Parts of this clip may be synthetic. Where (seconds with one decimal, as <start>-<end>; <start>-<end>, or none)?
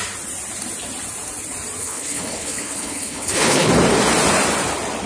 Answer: 1.8-3.7